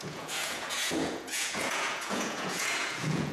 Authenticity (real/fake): fake